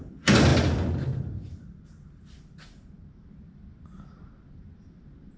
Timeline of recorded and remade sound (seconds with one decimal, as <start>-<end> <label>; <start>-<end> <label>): 0.0-5.4 recorded